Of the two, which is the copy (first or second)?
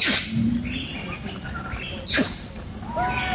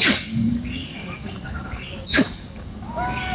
second